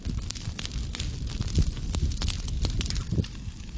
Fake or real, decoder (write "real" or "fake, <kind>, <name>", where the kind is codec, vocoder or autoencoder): real